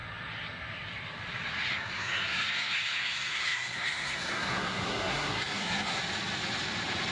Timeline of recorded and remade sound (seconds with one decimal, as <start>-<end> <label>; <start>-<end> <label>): 0.0-1.7 recorded; 1.7-6.0 remade; 6.0-7.1 recorded